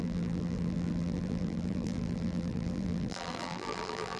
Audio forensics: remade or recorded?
remade